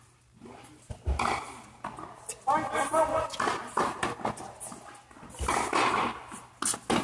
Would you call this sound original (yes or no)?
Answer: yes